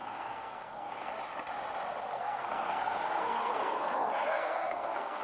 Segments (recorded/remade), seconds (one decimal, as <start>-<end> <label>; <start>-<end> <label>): 0.0-1.1 remade; 1.1-2.1 recorded; 2.1-5.2 remade